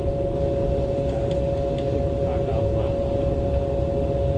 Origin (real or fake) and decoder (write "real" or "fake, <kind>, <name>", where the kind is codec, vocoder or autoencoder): real